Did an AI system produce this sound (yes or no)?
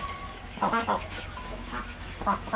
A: yes